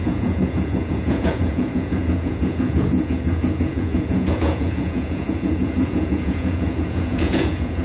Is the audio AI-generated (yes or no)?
yes